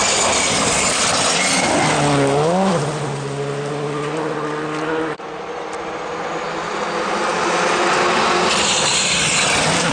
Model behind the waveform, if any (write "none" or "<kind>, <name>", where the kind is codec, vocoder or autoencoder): none